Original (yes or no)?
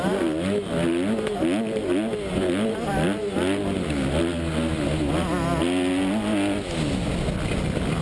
yes